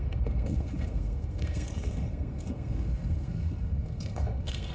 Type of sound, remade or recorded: remade